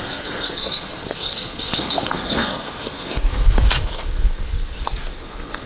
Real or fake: fake